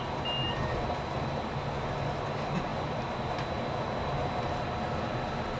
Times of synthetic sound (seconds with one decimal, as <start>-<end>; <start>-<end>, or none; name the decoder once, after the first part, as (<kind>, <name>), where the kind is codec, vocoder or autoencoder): none